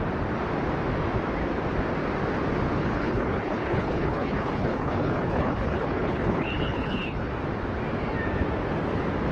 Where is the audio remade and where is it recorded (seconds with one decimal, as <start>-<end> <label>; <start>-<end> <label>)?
0.0-2.8 recorded; 2.8-7.3 remade; 7.3-9.3 recorded